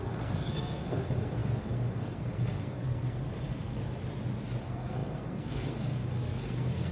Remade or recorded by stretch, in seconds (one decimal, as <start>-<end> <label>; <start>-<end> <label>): 0.0-3.8 remade; 3.8-4.6 recorded; 4.6-6.9 remade